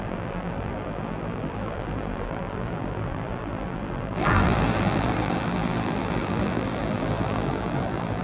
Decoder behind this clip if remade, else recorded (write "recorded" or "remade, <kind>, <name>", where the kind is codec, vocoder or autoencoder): remade, vocoder, BigVGAN v2